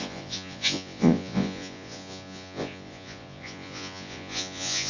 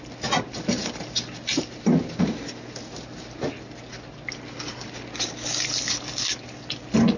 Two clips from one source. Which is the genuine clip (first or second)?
second